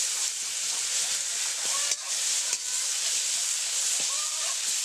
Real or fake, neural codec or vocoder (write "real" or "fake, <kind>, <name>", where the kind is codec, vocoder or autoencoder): real